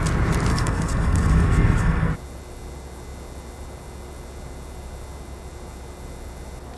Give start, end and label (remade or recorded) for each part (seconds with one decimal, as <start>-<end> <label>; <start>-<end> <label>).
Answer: 0.0-0.5 recorded; 0.5-2.1 remade; 2.1-6.8 recorded